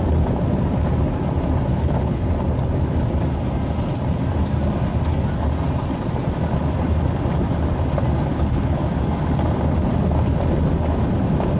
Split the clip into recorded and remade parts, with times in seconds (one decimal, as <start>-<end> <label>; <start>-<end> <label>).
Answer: 0.0-1.7 recorded; 1.7-2.3 remade; 2.3-8.3 recorded; 8.3-8.8 remade; 8.8-11.6 recorded